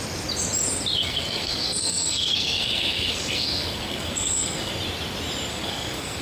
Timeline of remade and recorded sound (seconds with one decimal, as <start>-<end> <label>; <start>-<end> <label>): 0.0-1.0 recorded; 1.0-4.7 remade; 4.7-5.5 recorded; 5.5-6.2 remade